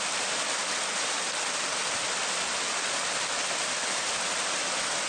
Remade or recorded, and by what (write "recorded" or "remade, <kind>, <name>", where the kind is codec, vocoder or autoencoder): recorded